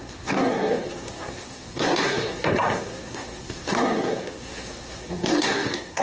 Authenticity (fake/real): fake